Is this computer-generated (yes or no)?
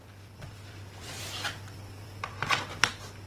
yes